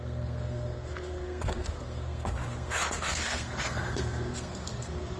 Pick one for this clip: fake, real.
fake